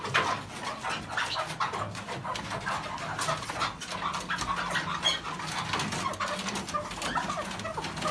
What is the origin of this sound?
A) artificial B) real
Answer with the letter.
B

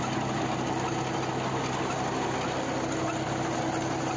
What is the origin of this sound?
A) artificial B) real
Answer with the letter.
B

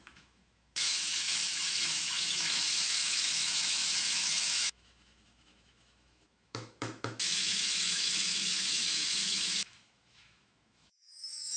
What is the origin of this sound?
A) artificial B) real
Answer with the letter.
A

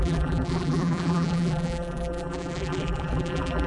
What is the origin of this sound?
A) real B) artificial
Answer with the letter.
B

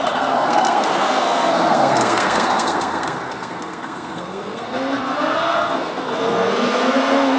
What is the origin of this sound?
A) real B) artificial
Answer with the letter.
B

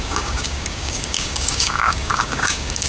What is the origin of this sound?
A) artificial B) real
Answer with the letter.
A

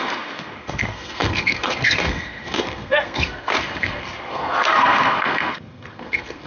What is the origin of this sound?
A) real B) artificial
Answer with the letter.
B